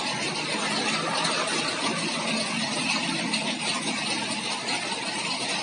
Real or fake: real